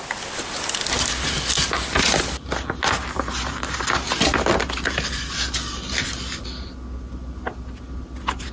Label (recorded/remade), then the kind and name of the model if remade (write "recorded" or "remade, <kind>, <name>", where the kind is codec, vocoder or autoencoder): recorded